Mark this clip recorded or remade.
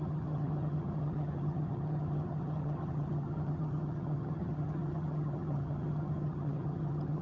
remade